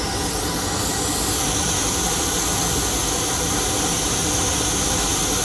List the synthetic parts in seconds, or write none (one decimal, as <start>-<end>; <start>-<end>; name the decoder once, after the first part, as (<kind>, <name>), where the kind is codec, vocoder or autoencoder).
none